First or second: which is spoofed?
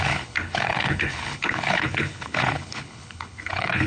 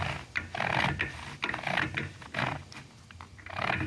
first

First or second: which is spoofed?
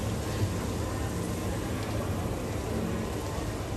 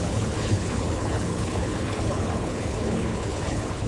second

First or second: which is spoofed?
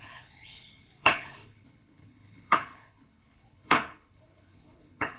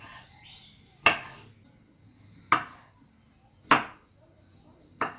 first